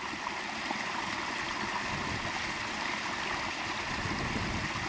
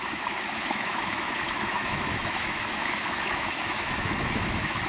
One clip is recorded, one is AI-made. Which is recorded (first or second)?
first